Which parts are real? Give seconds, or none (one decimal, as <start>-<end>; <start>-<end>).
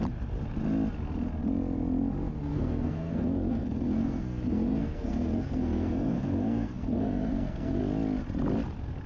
0.0-2.5; 7.8-9.1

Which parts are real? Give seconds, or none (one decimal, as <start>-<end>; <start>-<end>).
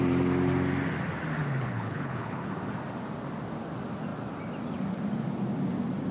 0.0-1.4; 2.5-6.1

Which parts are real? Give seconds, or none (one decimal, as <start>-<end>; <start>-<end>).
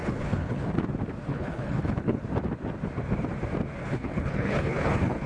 0.7-1.3; 2.2-3.8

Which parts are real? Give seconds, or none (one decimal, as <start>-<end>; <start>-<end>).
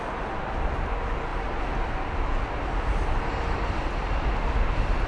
0.0-5.1